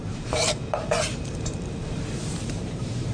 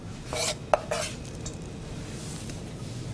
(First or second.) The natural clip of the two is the second